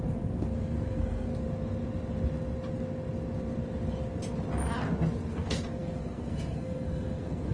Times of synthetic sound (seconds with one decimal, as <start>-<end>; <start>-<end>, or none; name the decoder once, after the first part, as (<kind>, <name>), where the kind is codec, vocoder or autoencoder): 0.0-1.3 (codec, SNAC); 5.3-7.5